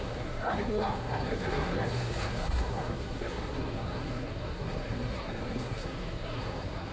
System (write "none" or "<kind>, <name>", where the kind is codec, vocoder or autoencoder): codec, SNAC